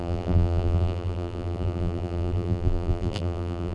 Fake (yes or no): yes